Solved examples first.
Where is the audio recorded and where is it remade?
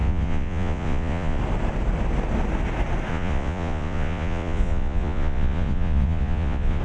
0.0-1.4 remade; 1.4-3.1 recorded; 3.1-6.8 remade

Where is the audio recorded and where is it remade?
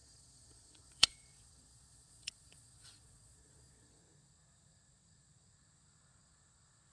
0.0-4.0 remade; 4.0-6.9 recorded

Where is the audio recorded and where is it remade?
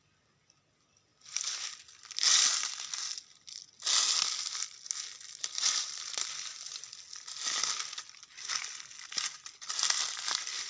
0.0-10.7 recorded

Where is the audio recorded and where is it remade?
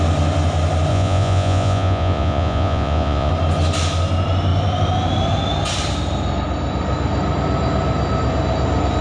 0.0-0.9 recorded; 0.9-3.3 remade; 3.3-9.0 recorded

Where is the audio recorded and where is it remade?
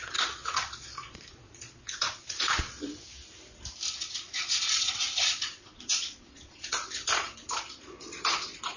0.0-2.9 remade; 2.9-4.0 recorded; 4.0-8.8 remade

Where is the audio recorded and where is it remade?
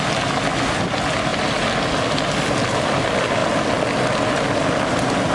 0.0-5.3 recorded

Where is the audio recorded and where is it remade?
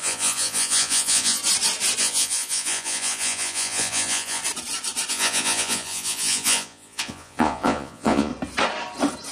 0.0-1.4 remade; 1.4-2.0 recorded; 2.0-4.4 remade; 4.4-5.1 recorded; 5.1-8.3 remade; 8.3-9.3 recorded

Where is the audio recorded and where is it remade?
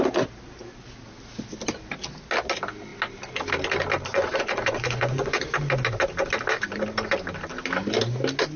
0.0-4.1 recorded; 4.1-5.4 remade; 5.4-8.6 recorded